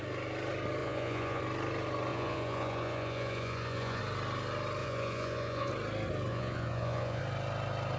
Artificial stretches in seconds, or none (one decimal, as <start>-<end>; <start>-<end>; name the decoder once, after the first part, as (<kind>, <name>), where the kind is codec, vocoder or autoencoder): 0.8-1.4 (vocoder, Vocos); 2.1-4.0; 4.8-5.7; 6.3-7.2